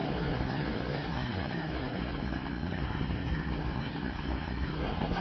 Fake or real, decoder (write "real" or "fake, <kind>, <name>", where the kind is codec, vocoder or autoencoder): fake, codec, SNAC